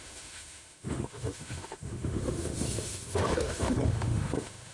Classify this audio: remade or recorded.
remade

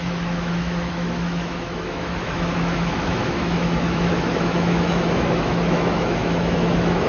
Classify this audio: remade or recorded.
remade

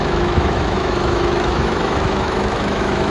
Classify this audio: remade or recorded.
remade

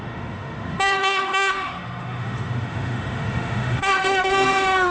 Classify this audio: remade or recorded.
remade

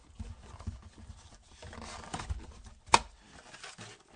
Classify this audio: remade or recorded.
recorded